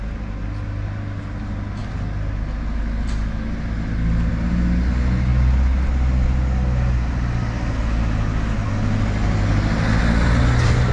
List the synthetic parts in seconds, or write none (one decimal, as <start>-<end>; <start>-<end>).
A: none